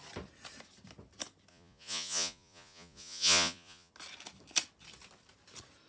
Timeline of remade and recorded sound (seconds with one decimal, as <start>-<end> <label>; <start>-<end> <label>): 0.0-1.5 recorded; 1.5-3.9 remade; 3.9-5.9 recorded